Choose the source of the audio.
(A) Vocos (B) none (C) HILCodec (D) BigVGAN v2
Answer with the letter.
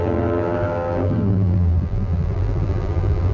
D